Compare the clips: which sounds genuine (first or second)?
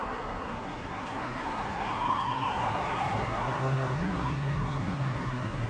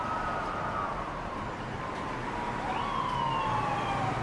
second